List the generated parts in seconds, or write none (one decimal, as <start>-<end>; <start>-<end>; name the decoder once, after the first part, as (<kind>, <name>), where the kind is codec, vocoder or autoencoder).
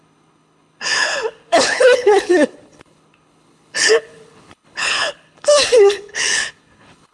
0.0-7.1 (codec, HILCodec)